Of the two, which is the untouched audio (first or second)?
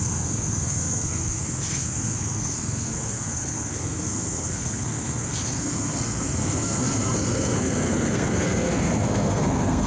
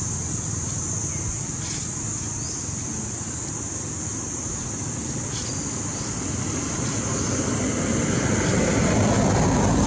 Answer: second